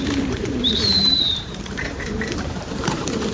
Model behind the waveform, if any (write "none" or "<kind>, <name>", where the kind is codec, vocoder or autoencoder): vocoder, BigVGAN v2